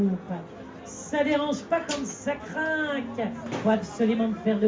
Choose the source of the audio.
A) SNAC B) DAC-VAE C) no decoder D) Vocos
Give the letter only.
C